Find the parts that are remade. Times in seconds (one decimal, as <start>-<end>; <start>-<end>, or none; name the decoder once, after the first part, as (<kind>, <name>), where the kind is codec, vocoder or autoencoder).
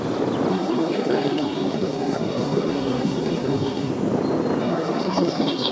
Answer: 0.5-3.9 (codec, SNAC); 4.6-5.7